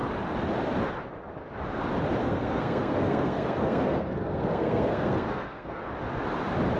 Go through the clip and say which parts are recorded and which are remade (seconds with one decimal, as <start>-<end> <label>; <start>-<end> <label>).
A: 0.0-2.2 recorded; 2.2-5.8 remade; 5.8-6.8 recorded